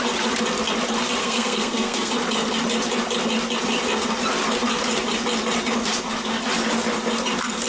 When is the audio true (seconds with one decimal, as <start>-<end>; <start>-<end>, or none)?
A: 0.0-1.2; 2.1-7.7